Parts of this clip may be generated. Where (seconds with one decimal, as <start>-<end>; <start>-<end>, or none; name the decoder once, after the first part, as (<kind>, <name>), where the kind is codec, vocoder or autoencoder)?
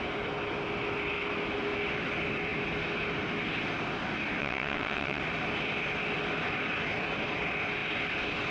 4.4-5.2 (vocoder, WaveNeXt)